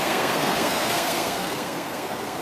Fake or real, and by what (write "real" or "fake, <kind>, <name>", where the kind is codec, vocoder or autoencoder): fake, codec, SNAC